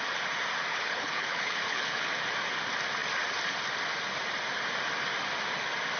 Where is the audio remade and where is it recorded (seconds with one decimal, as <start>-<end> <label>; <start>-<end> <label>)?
0.0-0.7 recorded; 0.7-2.1 remade; 2.1-6.0 recorded